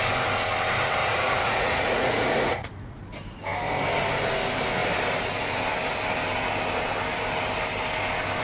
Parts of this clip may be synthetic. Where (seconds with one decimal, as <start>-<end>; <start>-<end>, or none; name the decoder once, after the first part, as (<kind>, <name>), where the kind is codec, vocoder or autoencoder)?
1.0-3.0 (vocoder, Vocos)